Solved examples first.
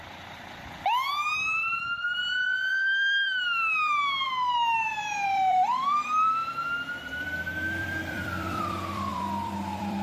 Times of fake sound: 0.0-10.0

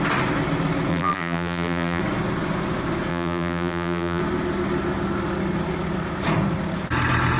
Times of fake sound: 0.9-2.0; 3.1-4.2